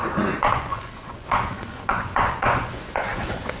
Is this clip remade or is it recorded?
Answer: remade